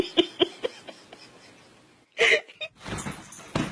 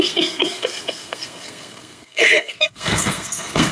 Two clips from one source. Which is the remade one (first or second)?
second